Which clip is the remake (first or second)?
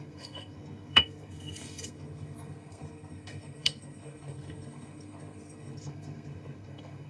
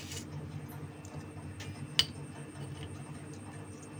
first